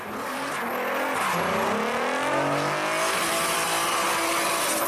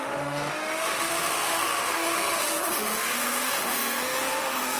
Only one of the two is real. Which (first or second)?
first